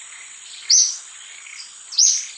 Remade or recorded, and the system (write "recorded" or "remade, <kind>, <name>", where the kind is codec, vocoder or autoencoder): recorded